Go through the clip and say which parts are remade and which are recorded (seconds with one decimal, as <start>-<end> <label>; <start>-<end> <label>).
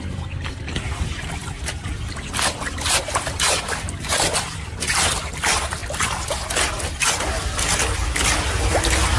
0.0-9.2 recorded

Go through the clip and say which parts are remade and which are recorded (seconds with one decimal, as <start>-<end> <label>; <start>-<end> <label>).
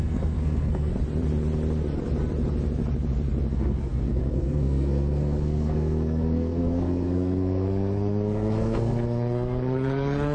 0.0-0.9 remade; 0.9-3.5 recorded; 3.5-10.3 remade